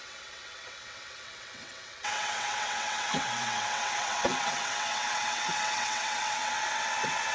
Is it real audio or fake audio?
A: fake